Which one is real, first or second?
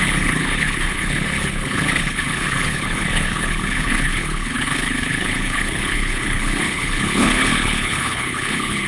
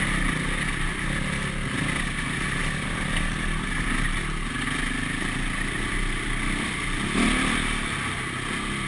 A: second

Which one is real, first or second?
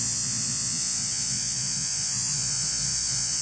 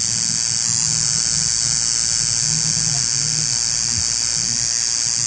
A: second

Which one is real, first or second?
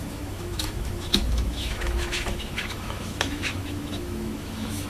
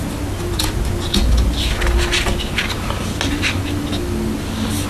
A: second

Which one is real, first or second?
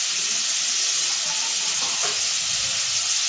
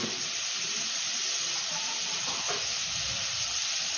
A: first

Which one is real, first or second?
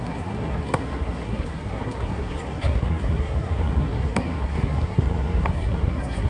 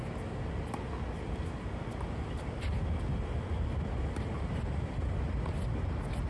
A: second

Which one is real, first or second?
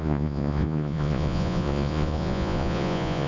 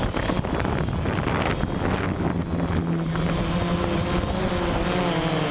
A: second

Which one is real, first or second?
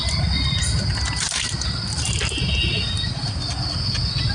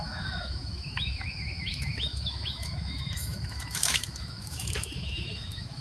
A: first